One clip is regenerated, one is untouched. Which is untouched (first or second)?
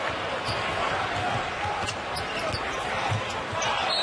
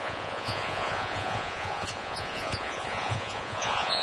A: first